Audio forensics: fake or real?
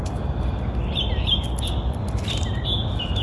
real